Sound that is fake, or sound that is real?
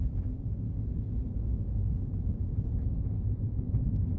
fake